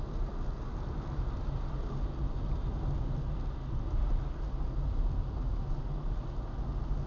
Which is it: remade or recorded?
recorded